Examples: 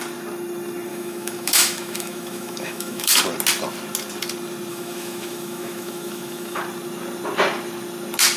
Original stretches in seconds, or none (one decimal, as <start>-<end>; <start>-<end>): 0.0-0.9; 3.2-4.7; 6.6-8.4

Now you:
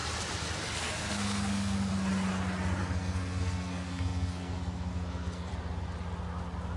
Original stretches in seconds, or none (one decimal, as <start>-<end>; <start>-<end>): 0.0-0.8; 1.9-2.8; 5.5-6.8

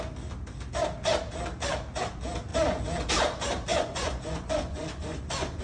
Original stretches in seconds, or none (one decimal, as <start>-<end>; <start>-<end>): 0.0-3.7

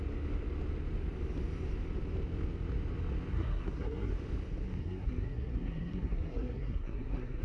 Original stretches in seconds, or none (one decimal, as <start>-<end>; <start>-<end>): 0.0-3.3; 4.1-4.8

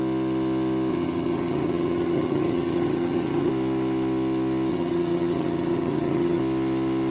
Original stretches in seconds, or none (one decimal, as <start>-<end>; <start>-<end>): 0.0-0.9; 3.5-4.7; 6.4-7.1

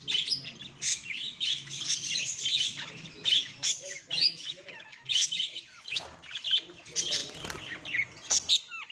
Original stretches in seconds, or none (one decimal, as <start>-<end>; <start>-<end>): 0.0-0.9; 1.8-2.5; 6.2-8.9

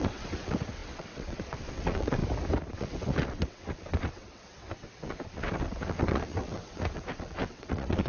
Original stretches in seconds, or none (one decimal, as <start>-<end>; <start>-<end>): 2.2-2.7

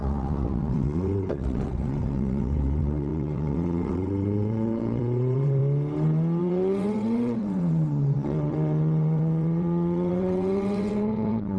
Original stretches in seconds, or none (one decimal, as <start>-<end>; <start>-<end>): 5.6-6.4